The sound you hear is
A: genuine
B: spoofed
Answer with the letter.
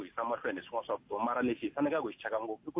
A